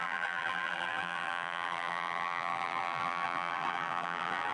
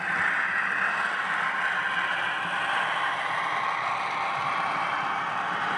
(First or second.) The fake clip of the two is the first